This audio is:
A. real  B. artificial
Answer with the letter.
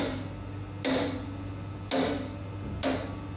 A